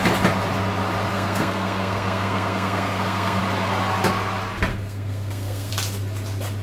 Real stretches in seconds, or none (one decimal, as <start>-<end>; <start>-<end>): 0.0-1.1; 3.4-4.7; 5.7-6.6